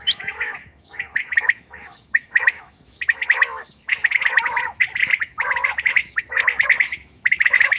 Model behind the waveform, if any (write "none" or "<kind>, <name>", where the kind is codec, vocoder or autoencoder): autoencoder, DAC-VAE